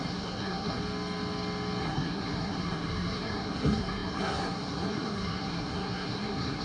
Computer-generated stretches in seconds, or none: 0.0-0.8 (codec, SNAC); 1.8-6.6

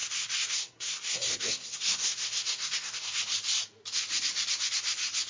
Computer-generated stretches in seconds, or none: 0.0-3.2 (codec, SNAC)

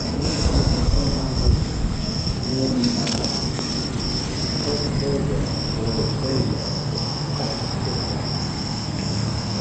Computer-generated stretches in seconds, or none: 0.0-3.7 (codec, SNAC); 6.3-7.7; 8.4-9.6

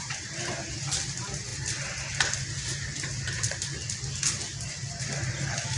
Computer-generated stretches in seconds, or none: none

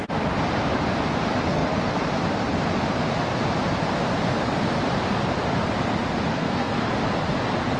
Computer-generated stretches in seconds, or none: 6.3-6.8 (codec, SNAC)

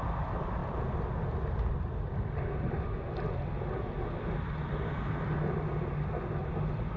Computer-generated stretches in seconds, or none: none